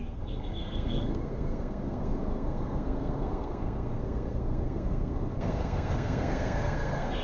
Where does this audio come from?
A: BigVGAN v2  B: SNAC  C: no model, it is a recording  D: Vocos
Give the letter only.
B